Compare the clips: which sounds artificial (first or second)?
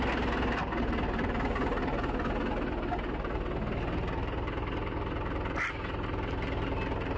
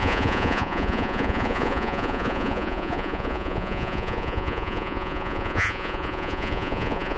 second